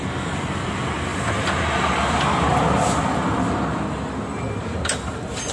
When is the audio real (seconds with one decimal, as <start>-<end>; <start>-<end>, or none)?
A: 0.0-1.1; 1.6-2.5; 4.6-5.5